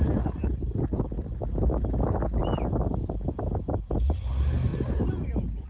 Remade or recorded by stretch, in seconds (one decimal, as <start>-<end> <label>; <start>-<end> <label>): 0.0-5.7 recorded